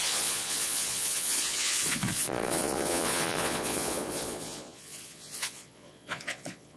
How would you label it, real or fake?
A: fake